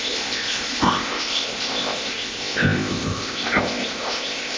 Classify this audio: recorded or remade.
remade